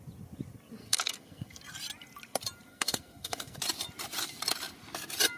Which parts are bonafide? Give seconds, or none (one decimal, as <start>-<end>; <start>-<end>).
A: 0.0-0.8; 1.6-2.7; 3.6-5.4